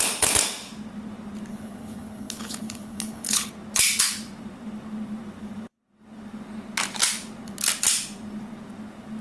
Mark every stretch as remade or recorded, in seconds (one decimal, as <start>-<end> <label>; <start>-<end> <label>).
0.0-1.5 recorded; 1.5-3.5 remade; 3.5-9.2 recorded